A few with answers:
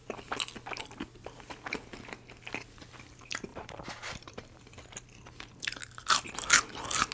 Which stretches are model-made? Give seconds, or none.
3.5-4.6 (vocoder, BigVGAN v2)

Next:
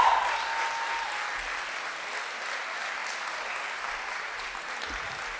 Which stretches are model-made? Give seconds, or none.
none

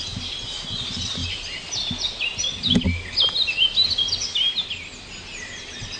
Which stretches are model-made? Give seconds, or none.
none